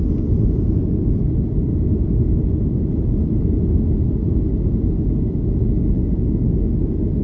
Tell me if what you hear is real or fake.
real